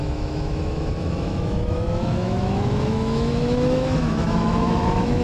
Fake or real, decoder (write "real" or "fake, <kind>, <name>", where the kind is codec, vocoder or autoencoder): fake, autoencoder, DAC-VAE